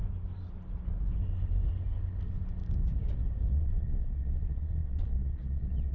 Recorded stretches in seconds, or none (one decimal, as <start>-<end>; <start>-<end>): 0.0-3.5